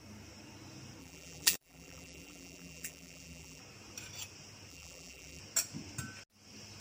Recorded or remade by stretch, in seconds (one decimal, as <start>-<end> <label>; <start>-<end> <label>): 0.0-1.0 recorded; 1.0-3.6 remade; 3.6-4.7 recorded; 4.7-5.4 remade; 5.4-6.8 recorded